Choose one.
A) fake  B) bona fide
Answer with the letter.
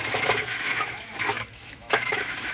A